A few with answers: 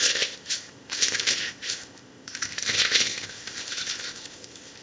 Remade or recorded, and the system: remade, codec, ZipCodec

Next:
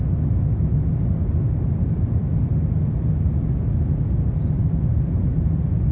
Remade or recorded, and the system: recorded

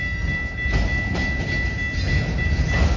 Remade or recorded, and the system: recorded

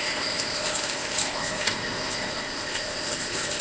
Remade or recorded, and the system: remade, codec, ZipCodec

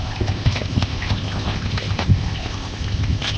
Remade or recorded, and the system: remade, codec, ZipCodec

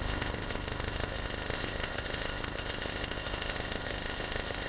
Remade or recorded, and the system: remade, codec, ZipCodec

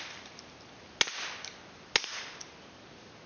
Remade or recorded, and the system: recorded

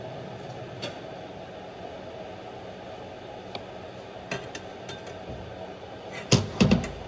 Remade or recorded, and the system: recorded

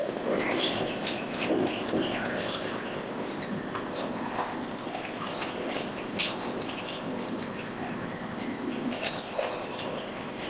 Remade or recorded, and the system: remade, codec, ZipCodec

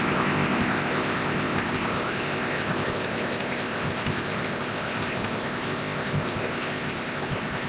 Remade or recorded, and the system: remade, codec, ZipCodec